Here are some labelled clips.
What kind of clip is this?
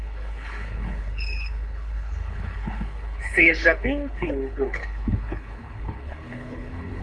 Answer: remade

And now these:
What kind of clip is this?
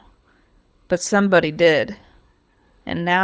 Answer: remade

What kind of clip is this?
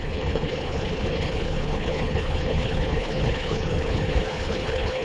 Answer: remade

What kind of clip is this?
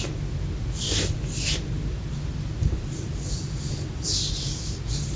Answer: recorded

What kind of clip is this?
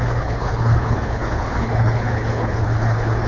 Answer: remade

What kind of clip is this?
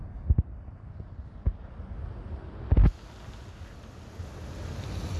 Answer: recorded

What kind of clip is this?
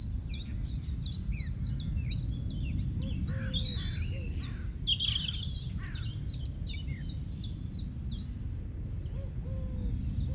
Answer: recorded